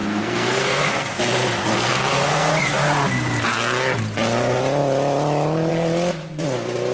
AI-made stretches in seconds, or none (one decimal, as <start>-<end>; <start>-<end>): 0.0-1.2; 1.6-2.5